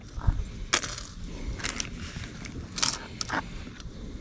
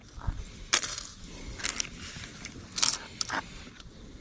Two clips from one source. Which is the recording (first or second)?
first